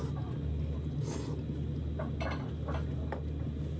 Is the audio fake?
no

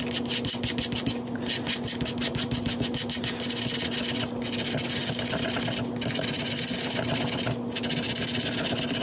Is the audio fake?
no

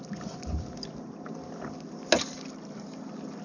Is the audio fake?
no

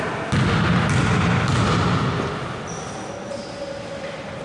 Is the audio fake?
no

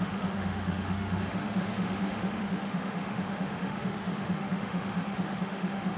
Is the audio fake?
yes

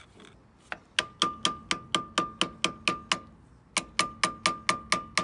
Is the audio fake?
no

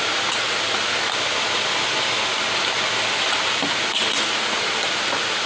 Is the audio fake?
no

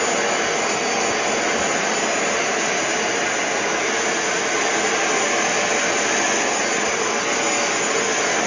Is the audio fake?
no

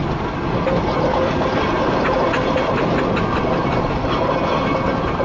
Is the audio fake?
no